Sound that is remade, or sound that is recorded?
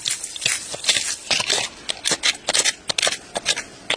recorded